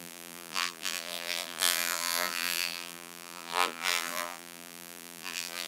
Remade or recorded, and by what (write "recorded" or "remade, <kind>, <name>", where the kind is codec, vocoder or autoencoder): remade, vocoder, BigVGAN v2